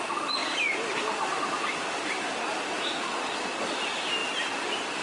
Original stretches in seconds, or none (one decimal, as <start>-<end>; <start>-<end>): 0.0-5.0